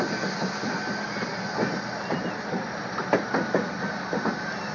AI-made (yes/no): no